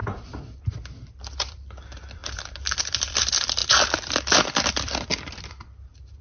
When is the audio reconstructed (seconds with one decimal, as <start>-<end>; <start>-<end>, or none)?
0.9-2.2; 2.8-6.2

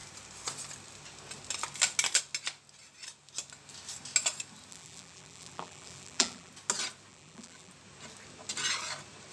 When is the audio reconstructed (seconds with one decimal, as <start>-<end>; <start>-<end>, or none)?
4.7-6.5; 7.1-7.7

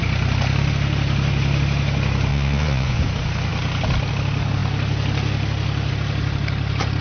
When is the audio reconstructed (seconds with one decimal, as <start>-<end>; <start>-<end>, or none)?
2.3-3.0

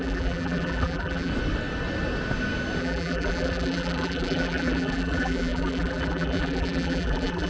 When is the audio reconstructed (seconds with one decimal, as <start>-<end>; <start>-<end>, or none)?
0.0-1.3; 2.8-7.5

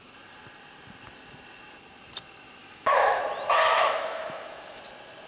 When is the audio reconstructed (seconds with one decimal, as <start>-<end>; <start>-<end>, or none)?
2.6-3.2; 3.7-4.8

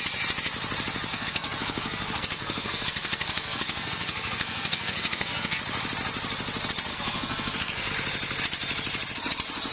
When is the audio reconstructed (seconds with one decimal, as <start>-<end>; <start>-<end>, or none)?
1.1-5.6; 6.9-7.9

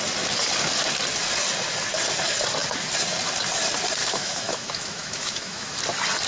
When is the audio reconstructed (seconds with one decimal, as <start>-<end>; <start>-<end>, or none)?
4.0-5.8

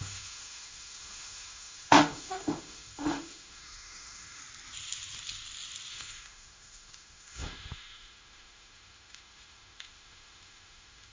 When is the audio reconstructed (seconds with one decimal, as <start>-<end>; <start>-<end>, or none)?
0.0-4.4; 5.9-11.1